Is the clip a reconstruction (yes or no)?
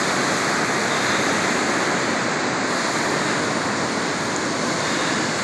no